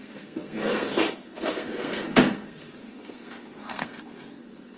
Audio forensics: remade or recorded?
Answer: remade